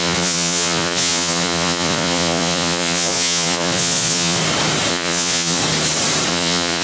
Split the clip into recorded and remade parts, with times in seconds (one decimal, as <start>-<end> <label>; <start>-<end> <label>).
0.0-4.4 remade; 4.4-4.9 recorded; 4.9-5.6 remade; 5.6-6.3 recorded; 6.3-6.8 remade